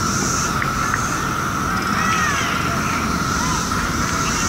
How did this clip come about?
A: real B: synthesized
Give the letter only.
A